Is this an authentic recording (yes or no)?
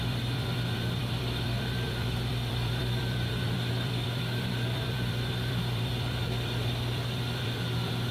no